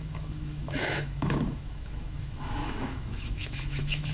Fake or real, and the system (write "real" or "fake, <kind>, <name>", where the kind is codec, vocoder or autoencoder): fake, autoencoder, DAC-VAE